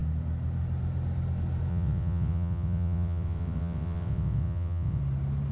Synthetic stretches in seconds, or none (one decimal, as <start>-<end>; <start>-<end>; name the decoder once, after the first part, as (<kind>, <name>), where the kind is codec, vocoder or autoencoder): 1.7-5.0 (vocoder, WaveNeXt)